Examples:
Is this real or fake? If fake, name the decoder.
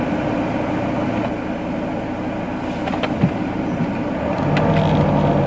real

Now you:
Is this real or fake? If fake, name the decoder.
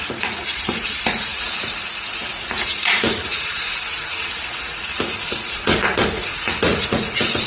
fake, vocoder, Vocos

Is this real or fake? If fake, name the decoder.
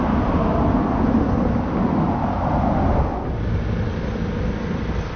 real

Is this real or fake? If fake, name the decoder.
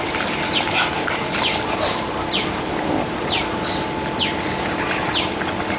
real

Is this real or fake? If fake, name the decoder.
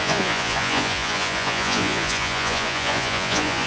fake, vocoder, Vocos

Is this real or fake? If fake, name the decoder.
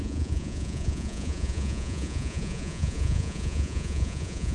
fake, vocoder, Vocos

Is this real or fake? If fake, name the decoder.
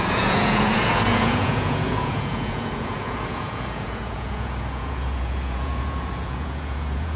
fake, vocoder, Vocos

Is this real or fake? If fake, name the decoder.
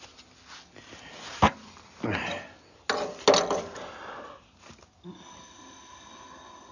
real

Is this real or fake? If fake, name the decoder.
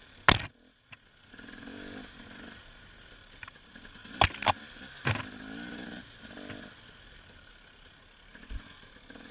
real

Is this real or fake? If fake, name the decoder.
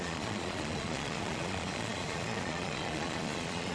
fake, vocoder, Vocos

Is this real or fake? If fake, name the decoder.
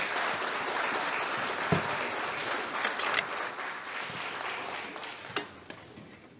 real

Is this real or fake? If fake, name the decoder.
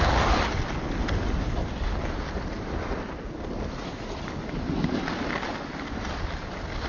real